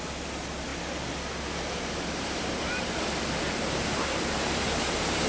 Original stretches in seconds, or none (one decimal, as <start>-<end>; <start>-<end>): 0.0-5.3